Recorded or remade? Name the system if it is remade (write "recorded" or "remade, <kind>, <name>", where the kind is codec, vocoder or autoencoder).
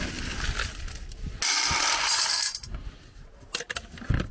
recorded